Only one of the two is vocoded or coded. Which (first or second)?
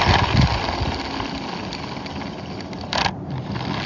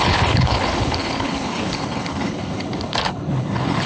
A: second